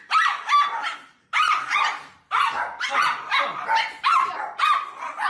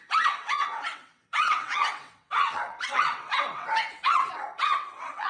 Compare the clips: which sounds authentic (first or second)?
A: first